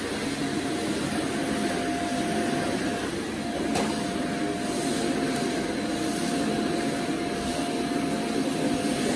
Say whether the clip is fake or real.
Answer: real